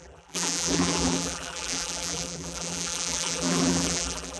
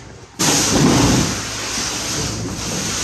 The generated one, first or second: first